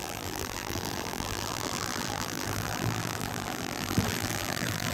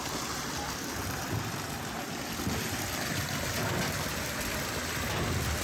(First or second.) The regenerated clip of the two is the first